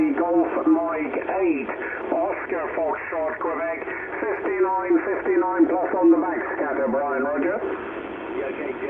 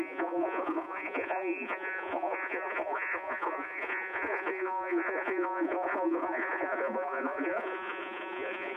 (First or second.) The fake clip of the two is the second